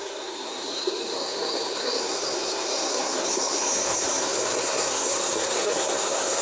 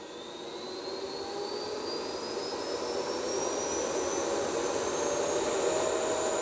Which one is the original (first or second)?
second